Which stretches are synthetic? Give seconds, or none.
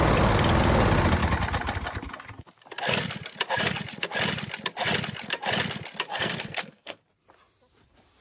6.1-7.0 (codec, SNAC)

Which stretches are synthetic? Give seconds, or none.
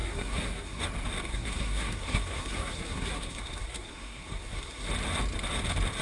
0.0-0.8 (codec, SNAC); 1.3-4.9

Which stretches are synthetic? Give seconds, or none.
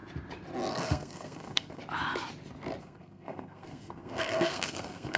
0.7-1.8 (codec, SNAC); 2.8-5.2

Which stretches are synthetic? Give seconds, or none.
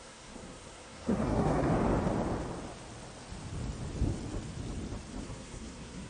0.0-1.7 (codec, SNAC); 5.2-6.1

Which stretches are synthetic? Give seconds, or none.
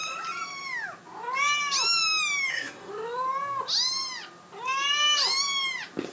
2.5-2.9 (codec, SNAC)